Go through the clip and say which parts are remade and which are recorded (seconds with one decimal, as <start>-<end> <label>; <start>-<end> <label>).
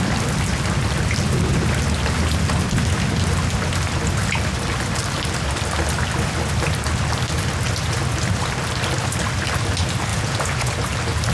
0.0-10.1 recorded; 10.1-10.7 remade; 10.7-11.3 recorded